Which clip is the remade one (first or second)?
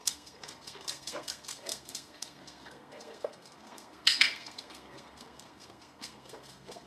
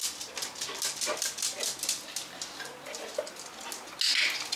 first